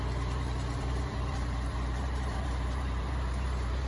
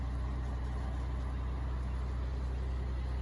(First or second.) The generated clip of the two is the first